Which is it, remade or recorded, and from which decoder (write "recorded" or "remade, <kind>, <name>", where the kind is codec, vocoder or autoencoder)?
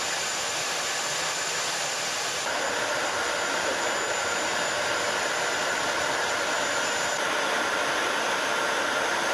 recorded